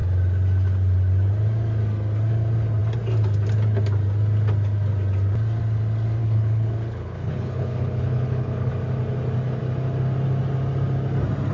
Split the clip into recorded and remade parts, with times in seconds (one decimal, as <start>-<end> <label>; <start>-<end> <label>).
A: 0.0-6.2 recorded; 6.2-8.7 remade; 8.7-11.5 recorded